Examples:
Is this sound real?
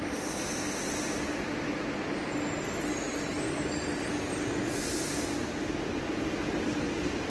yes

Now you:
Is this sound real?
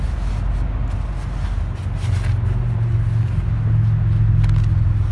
yes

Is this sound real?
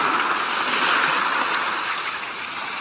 yes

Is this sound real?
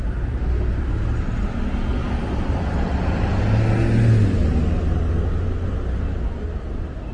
yes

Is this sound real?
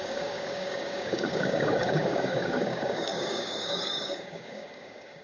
no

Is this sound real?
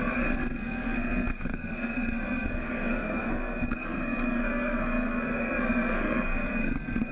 no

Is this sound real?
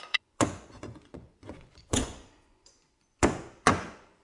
no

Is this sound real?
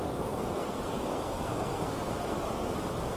no